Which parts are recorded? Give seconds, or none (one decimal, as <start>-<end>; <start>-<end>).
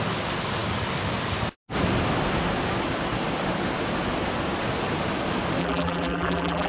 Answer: 0.0-5.6